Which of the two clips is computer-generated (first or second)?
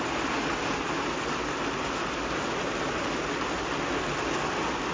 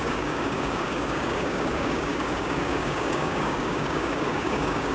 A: second